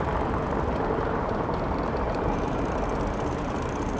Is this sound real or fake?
fake